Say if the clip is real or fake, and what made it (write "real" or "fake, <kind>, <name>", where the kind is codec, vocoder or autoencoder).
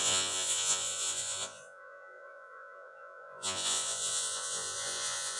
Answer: fake, vocoder, Vocos